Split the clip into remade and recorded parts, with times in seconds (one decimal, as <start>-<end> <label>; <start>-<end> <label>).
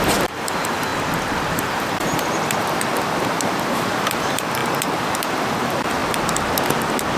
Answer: 0.0-0.9 remade; 0.9-1.5 recorded; 1.5-6.0 remade; 6.0-7.2 recorded